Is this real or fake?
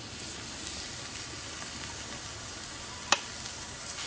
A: real